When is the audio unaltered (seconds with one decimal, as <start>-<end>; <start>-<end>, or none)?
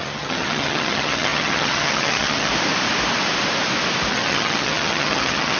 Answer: 2.5-4.1